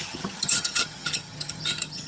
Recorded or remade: remade